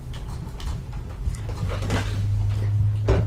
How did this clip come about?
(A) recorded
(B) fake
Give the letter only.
A